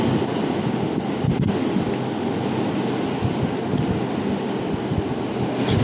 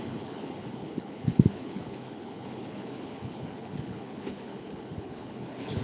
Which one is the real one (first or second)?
first